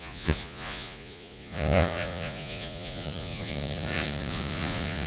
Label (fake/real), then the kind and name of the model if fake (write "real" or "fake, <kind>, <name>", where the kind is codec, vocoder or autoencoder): fake, vocoder, Vocos